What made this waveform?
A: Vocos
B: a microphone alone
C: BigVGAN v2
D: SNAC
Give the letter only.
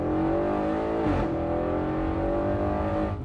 B